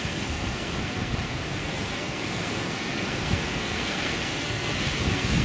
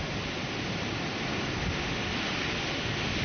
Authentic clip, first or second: second